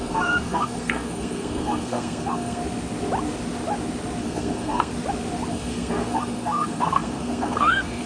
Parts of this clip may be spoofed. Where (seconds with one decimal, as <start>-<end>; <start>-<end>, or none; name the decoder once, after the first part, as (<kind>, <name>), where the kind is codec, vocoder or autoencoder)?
0.0-2.6 (codec, SNAC); 4.2-4.9; 5.5-8.1